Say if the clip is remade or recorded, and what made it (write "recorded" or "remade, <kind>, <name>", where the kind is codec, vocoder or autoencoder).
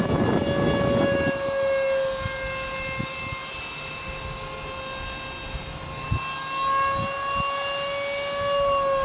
recorded